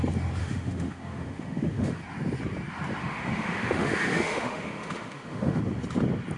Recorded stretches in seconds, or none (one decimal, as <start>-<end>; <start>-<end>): 0.0-0.4; 2.0-3.0; 5.6-6.4